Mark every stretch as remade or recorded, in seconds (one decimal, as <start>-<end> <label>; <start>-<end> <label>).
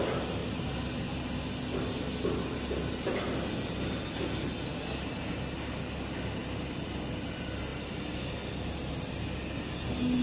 0.0-10.2 recorded